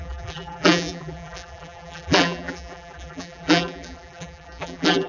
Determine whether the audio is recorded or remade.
remade